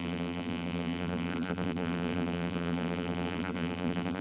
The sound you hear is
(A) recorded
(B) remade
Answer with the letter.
B